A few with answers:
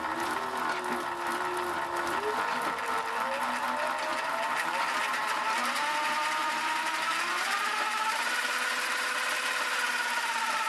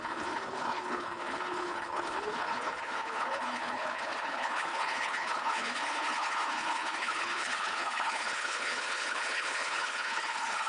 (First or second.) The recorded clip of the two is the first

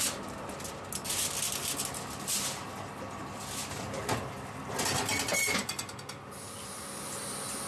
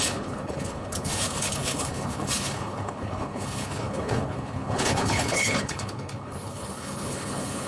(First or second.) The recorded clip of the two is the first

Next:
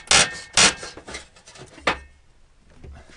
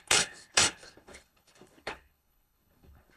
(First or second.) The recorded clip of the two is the first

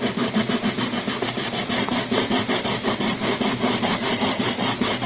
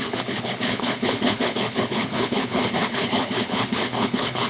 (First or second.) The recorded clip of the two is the first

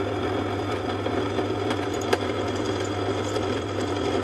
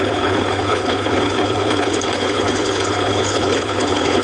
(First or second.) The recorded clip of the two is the first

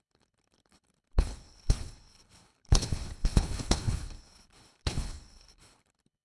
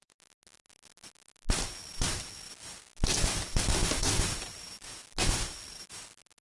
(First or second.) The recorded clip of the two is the second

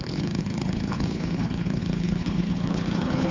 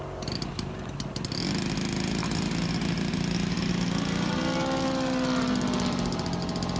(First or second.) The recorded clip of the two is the second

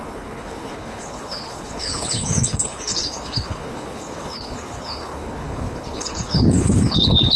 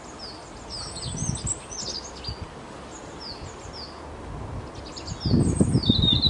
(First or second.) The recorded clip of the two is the second